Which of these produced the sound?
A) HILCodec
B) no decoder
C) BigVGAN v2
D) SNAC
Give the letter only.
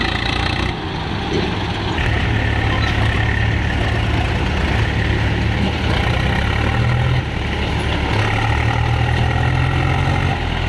B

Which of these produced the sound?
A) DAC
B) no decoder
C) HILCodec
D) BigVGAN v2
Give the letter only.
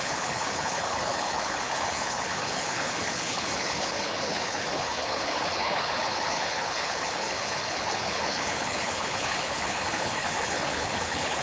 C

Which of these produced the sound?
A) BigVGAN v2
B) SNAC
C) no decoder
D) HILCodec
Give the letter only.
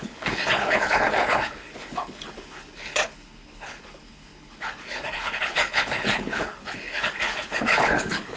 D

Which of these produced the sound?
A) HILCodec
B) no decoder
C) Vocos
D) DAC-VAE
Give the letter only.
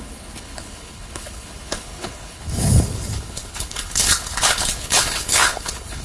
A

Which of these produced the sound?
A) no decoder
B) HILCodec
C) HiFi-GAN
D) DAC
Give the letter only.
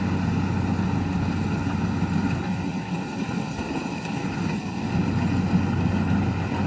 A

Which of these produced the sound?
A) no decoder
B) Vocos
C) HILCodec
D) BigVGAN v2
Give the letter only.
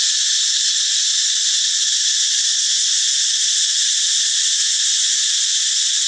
A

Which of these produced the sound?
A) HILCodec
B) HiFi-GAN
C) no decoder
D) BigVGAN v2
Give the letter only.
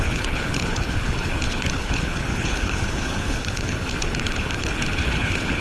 A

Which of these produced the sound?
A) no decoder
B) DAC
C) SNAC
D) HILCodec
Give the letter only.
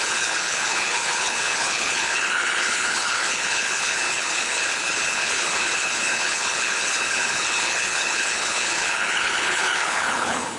D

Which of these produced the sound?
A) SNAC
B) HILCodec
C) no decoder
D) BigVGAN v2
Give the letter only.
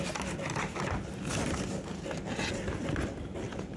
C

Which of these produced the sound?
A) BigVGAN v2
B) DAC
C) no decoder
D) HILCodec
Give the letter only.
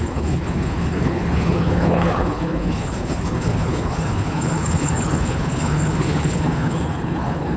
D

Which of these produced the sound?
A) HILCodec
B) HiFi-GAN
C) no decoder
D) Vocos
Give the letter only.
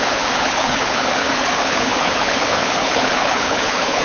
A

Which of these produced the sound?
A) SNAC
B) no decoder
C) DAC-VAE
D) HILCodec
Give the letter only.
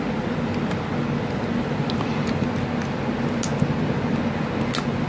B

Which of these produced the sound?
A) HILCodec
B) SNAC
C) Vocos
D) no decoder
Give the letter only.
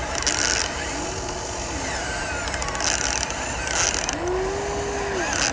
D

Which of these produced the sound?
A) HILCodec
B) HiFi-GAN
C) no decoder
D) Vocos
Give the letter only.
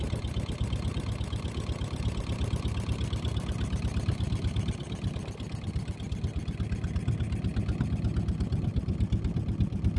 C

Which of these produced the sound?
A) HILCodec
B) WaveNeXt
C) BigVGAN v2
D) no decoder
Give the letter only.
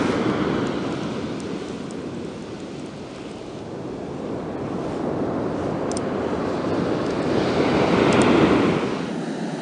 D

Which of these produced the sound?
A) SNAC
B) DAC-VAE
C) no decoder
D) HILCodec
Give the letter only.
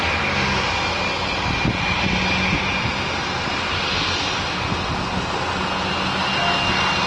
C